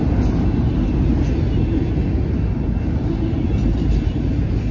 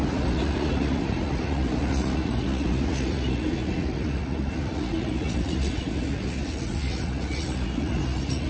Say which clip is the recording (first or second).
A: first